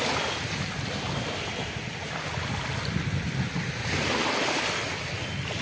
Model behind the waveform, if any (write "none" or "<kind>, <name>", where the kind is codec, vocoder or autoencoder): none